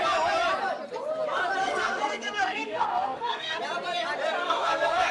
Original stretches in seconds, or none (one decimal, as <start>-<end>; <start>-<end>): 0.0-1.6; 3.6-4.4